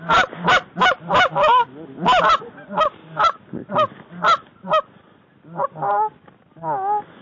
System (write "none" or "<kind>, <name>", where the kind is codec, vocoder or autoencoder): none